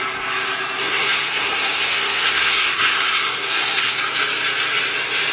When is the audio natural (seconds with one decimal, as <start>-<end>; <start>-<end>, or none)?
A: 0.0-0.8; 4.0-5.3